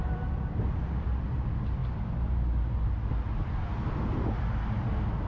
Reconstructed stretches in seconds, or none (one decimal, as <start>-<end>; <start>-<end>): 0.0-0.7